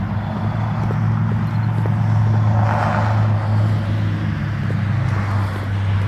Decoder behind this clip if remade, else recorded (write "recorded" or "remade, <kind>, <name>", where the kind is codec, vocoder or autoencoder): recorded